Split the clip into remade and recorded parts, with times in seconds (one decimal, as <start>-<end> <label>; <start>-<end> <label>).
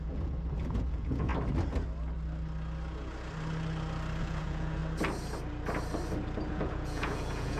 0.0-1.3 remade; 1.3-4.2 recorded; 4.2-4.8 remade; 4.8-6.5 recorded; 6.5-7.6 remade